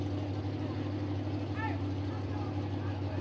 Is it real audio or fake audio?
real